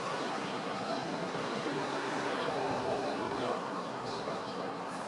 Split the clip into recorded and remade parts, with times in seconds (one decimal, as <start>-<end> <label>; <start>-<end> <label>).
0.0-5.1 remade